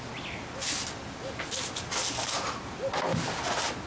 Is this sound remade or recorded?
recorded